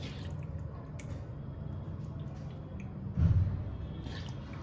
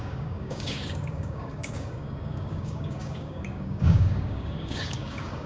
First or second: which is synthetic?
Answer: second